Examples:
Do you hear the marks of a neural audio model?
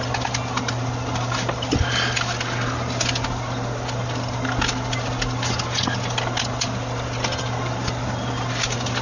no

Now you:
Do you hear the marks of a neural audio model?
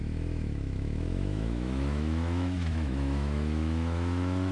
yes